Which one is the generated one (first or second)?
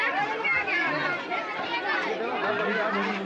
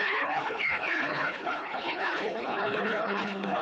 second